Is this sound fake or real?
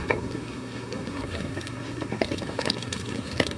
fake